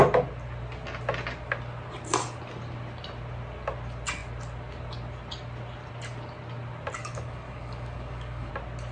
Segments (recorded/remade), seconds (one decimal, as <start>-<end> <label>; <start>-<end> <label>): 0.0-7.0 recorded; 7.0-8.5 remade; 8.5-8.9 recorded